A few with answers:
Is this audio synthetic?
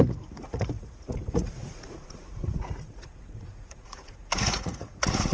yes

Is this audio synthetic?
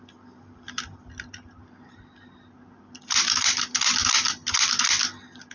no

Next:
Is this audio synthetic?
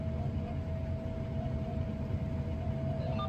no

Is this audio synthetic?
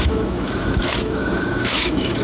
yes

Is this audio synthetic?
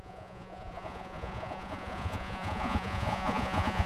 yes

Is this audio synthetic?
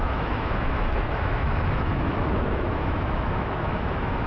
yes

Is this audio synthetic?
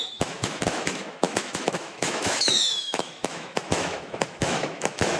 yes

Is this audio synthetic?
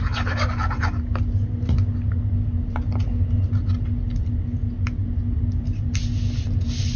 no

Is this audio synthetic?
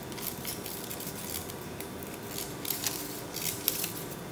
no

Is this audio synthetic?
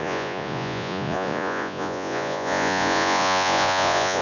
yes